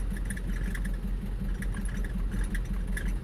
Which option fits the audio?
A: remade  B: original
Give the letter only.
B